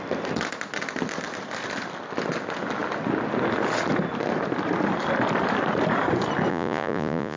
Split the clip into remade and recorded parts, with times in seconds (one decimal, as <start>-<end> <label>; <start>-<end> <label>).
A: 0.0-6.5 recorded; 6.5-7.4 remade